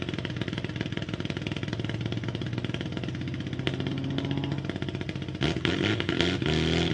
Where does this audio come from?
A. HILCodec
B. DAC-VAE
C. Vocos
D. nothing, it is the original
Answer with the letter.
D